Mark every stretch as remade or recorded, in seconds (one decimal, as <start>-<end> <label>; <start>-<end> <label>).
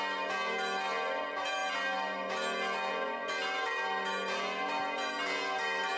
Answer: 0.0-6.0 recorded